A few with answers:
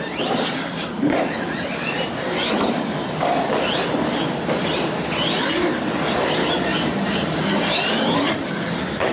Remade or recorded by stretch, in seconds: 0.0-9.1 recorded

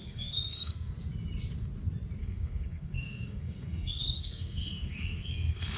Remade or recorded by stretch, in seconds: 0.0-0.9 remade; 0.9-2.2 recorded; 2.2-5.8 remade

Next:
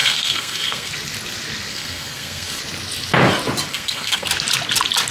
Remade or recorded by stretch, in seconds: 0.0-0.9 remade; 0.9-1.7 recorded; 1.7-2.6 remade; 2.6-3.7 recorded; 3.7-4.3 remade; 4.3-5.1 recorded

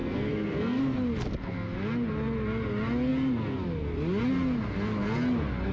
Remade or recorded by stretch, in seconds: 0.0-0.8 remade; 0.8-5.7 recorded

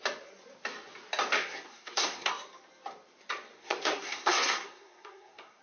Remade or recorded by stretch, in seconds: 0.0-1.4 recorded; 1.4-2.3 remade; 2.3-3.6 recorded; 3.6-5.6 remade